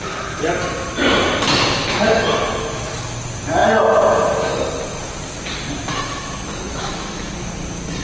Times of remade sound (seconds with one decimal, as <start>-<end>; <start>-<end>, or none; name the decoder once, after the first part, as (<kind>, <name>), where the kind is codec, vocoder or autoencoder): 1.8-2.8 (autoencoder, DAC-VAE); 5.9-7.3